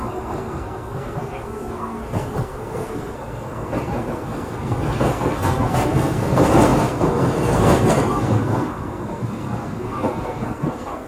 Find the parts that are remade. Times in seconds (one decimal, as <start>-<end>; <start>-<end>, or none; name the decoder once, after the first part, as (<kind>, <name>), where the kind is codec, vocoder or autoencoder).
0.0-11.1 (codec, SNAC)